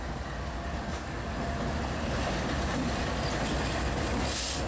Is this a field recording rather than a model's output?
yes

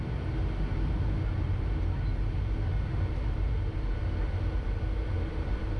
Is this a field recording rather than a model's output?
yes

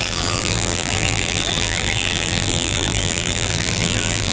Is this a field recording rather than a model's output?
no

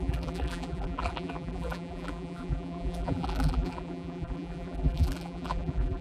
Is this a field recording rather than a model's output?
no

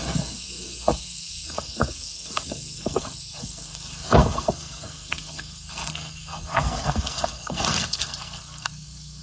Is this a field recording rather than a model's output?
no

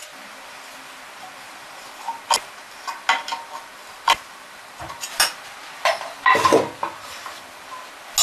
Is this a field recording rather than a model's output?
yes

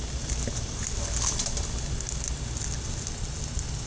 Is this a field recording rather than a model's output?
yes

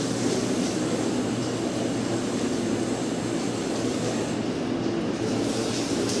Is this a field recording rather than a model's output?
yes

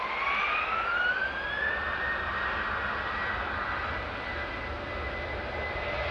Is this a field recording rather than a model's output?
yes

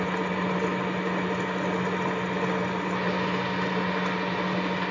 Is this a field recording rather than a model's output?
yes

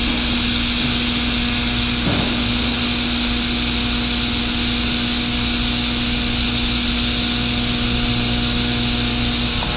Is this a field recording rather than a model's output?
yes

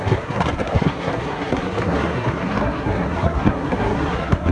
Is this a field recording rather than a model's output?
no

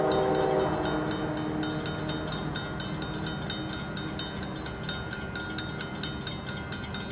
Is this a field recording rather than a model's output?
yes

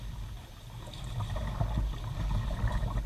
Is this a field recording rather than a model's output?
yes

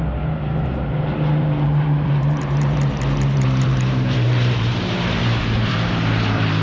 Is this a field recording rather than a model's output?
no